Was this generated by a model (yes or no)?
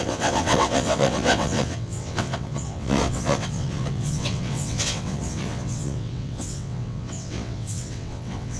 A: yes